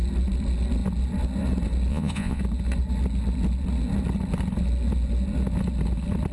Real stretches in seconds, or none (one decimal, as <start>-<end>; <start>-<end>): 0.0-1.9; 2.4-6.3